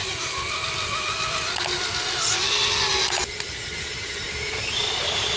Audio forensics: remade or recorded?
recorded